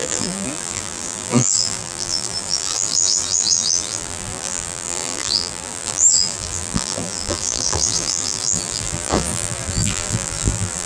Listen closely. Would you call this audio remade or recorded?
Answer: remade